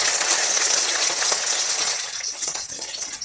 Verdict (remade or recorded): remade